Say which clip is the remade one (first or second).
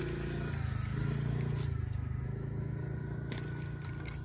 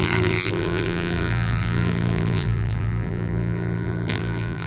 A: second